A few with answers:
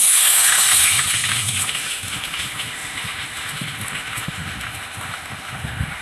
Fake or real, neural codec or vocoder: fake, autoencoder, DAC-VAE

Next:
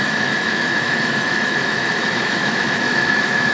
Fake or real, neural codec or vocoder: fake, autoencoder, DAC-VAE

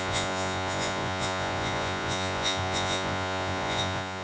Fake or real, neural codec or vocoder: fake, vocoder, Vocos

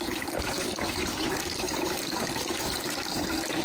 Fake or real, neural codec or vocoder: fake, codec, DAC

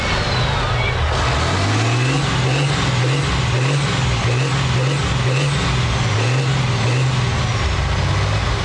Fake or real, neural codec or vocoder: real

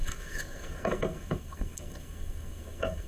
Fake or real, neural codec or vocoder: fake, codec, SNAC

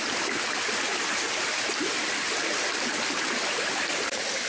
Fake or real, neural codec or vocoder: real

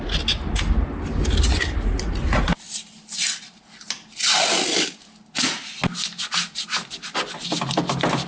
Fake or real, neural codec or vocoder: real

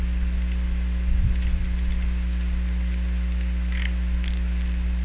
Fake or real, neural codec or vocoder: real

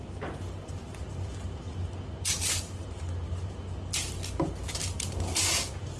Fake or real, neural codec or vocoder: real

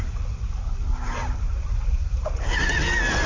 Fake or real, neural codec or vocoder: real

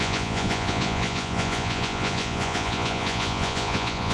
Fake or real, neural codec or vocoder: fake, vocoder, Vocos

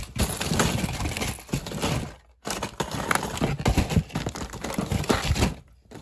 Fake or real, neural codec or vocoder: real